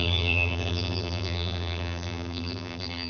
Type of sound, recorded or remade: remade